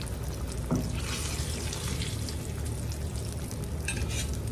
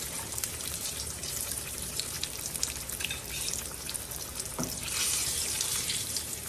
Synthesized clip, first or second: second